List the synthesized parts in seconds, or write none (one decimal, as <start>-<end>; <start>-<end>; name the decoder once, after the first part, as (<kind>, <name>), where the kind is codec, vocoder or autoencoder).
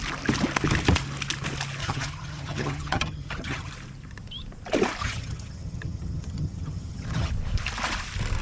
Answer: 1.8-3.7 (vocoder, HiFi-GAN); 5.0-7.3